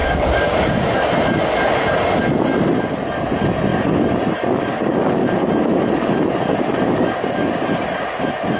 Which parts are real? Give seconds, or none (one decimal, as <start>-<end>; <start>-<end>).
1.0-8.6